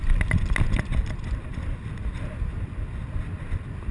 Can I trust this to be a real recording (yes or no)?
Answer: yes